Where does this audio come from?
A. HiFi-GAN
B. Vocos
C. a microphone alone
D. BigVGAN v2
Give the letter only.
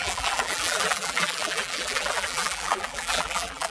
D